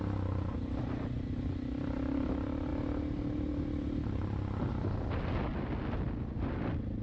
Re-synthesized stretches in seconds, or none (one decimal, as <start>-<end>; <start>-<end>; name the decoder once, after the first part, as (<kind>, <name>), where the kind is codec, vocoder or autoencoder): none